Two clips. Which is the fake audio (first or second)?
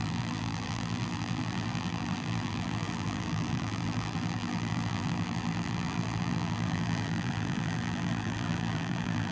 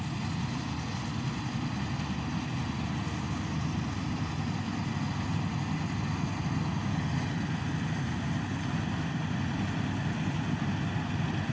first